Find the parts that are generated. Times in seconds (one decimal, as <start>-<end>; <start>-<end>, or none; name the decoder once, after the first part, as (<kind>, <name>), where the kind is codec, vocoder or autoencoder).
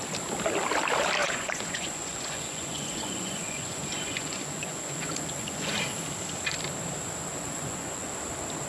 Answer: 1.2-5.7 (vocoder, Vocos); 7.3-8.1